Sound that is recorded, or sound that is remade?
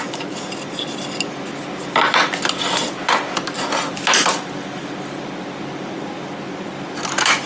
recorded